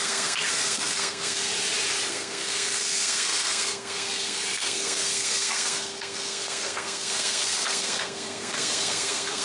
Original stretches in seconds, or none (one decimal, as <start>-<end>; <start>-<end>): 1.5-2.1